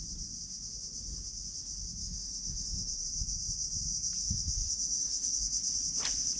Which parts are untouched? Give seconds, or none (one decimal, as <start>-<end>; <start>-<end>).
0.0-2.0; 3.0-4.2; 5.4-6.4